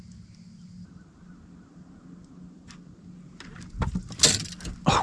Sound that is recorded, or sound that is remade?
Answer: recorded